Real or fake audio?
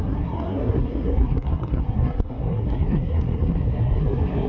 fake